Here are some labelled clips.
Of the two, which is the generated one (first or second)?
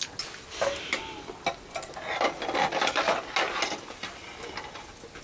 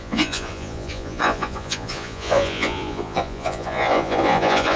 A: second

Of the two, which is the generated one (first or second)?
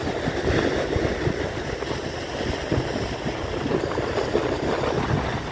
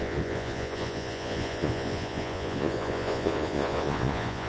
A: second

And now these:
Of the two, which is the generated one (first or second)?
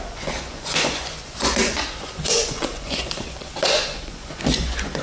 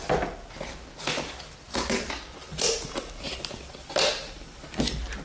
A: first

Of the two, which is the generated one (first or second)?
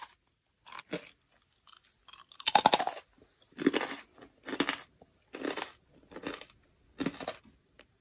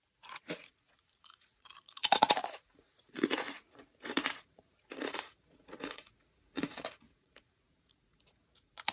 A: second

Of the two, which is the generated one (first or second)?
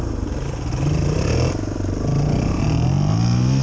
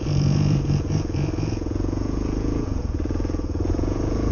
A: second